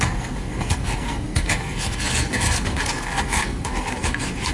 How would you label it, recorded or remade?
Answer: remade